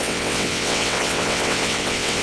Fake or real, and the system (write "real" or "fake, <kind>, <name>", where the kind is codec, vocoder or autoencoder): fake, vocoder, WaveNeXt